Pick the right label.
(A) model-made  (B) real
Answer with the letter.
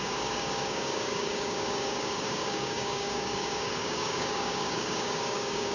A